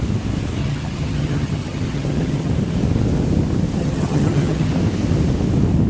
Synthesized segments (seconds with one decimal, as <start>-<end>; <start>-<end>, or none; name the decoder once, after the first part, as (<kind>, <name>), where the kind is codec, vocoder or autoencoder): 0.6-2.5 (vocoder, HiFi-GAN); 3.8-4.7